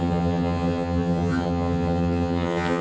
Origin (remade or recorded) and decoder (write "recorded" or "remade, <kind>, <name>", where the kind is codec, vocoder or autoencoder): remade, vocoder, HiFi-GAN